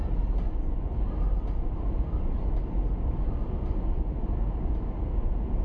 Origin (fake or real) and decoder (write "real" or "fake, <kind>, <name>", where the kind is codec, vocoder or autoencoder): real